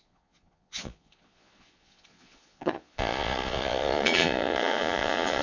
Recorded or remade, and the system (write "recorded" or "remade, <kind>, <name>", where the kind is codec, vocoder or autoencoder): remade, vocoder, Vocos